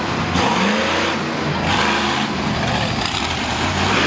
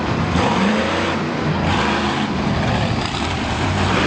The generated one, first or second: second